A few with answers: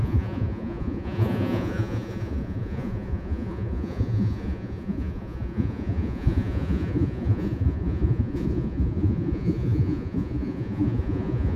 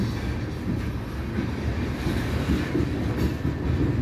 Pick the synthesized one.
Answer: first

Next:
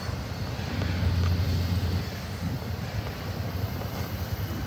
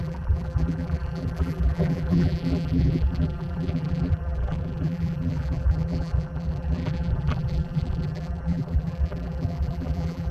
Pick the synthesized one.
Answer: second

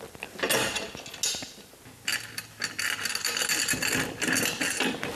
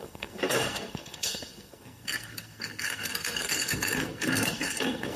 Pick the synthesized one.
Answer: second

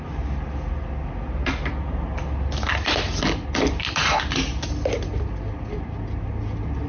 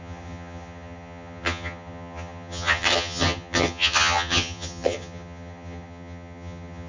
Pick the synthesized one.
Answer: second